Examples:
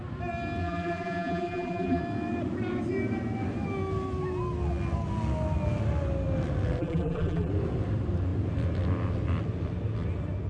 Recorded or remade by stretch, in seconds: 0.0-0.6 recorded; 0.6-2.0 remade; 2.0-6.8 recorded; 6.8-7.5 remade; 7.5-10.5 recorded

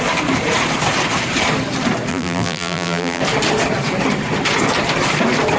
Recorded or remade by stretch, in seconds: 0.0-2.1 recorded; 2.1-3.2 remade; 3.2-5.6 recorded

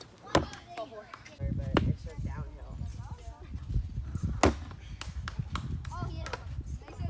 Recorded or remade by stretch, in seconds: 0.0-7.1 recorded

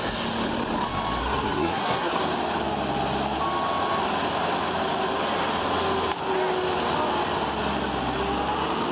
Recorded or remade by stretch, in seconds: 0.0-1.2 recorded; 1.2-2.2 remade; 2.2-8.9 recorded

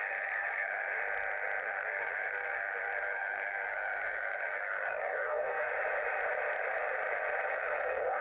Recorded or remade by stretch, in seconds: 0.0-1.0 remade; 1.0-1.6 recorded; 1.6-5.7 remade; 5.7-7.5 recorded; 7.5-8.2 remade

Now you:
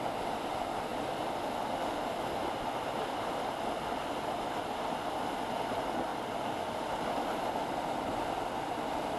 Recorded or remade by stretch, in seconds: 0.0-9.2 recorded